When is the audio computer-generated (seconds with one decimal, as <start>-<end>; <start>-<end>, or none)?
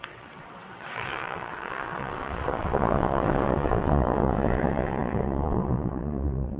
0.0-6.6